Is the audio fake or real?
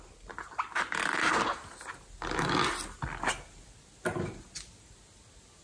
real